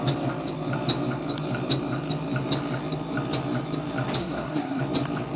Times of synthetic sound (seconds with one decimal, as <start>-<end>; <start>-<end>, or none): 4.2-4.8